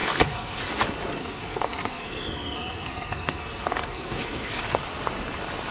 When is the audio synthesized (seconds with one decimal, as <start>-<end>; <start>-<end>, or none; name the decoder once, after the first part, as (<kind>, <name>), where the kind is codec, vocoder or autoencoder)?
0.0-0.6 (codec, SNAC); 1.2-4.6